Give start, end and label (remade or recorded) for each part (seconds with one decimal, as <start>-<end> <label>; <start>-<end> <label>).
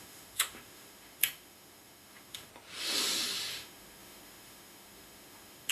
0.0-2.5 remade; 2.5-3.5 recorded; 3.5-5.7 remade